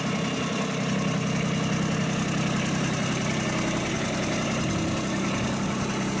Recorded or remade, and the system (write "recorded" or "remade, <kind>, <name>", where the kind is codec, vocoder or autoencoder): recorded